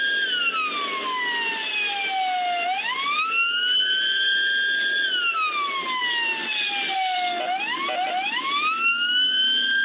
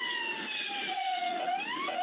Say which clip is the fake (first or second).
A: second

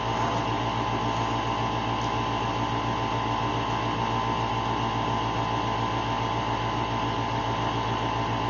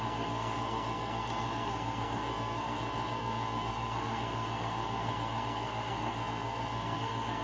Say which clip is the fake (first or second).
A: second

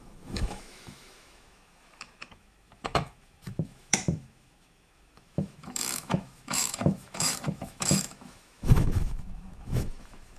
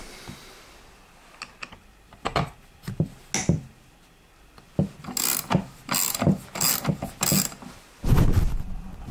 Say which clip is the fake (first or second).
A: first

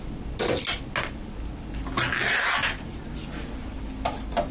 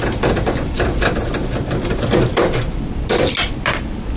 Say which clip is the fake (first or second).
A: second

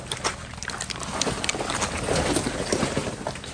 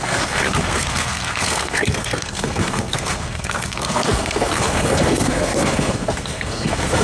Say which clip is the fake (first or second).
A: second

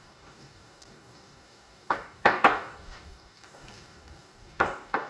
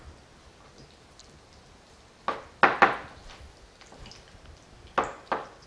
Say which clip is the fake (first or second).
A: first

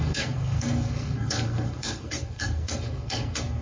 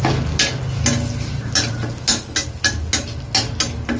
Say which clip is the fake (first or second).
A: first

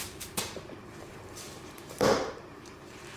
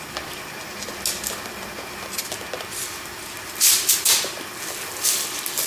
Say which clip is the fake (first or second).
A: first